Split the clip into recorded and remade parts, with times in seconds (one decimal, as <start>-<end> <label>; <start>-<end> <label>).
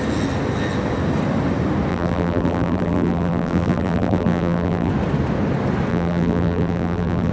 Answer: 0.0-1.9 recorded; 1.9-4.9 remade; 4.9-5.9 recorded; 5.9-7.3 remade